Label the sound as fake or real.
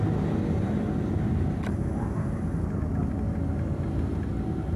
real